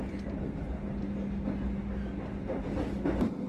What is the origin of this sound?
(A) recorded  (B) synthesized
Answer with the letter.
A